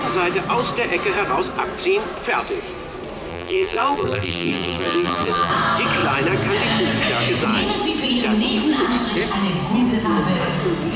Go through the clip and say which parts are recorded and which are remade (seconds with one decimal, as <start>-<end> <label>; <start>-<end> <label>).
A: 0.0-3.3 recorded; 3.3-5.5 remade; 5.5-11.0 recorded